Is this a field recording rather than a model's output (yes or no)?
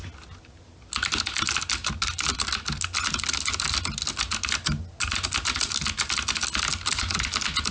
yes